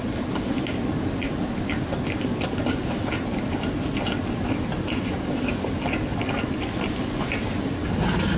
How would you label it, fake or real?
real